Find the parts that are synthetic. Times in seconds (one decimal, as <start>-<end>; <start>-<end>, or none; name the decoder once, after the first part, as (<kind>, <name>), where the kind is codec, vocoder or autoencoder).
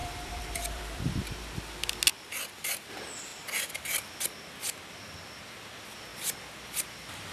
0.0-1.0 (vocoder, BigVGAN v2); 2.1-2.9